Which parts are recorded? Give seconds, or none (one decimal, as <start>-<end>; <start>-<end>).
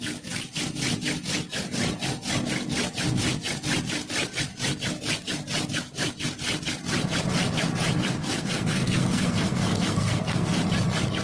0.0-8.2; 10.6-11.2